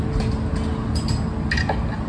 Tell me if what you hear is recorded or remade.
recorded